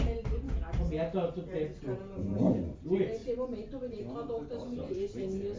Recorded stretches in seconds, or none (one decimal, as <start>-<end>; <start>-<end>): 0.0-5.6

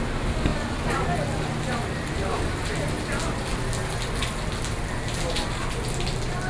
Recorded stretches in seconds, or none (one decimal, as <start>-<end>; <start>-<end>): 0.0-6.5

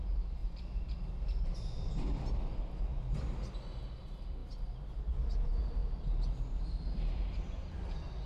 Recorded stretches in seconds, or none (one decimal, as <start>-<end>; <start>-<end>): 0.0-0.4; 2.4-8.3

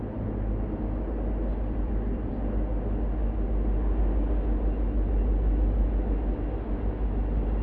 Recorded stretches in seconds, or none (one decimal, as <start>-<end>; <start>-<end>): 0.0-1.5; 2.3-7.6

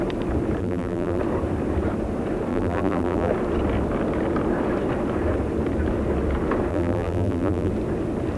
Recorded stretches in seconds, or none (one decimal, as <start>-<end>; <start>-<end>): 0.0-0.6; 1.2-2.5; 3.3-6.7; 7.7-8.4